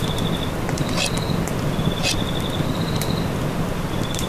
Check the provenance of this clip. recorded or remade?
recorded